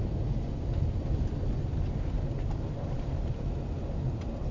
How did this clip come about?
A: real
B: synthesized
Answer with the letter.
A